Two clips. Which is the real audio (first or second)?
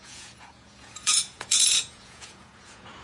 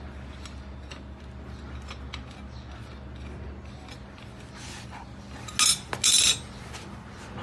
second